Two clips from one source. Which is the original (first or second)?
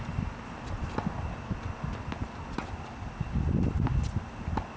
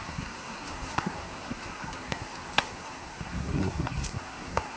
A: first